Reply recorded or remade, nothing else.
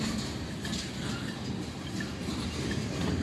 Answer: recorded